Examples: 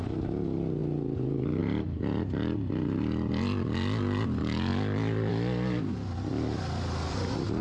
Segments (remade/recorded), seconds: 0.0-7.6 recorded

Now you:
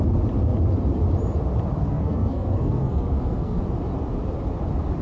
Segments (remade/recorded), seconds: 0.0-1.8 recorded; 1.8-3.6 remade; 3.6-5.0 recorded